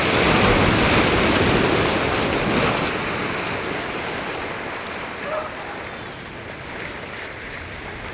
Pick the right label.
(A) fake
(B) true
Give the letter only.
B